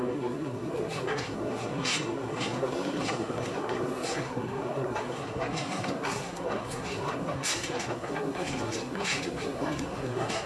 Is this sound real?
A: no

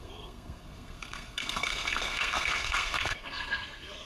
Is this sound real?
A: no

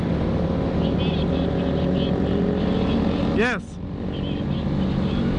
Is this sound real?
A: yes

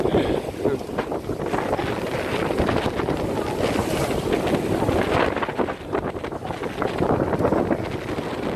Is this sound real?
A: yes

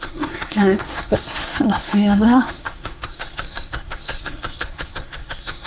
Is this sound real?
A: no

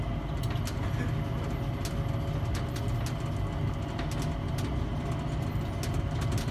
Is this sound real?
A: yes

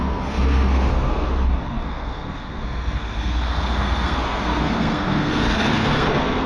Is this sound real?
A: no